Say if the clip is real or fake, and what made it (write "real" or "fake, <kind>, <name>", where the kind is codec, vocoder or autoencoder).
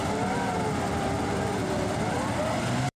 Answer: fake, vocoder, BigVGAN v2